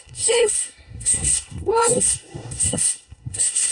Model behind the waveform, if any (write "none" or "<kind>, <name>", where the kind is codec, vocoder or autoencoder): codec, SNAC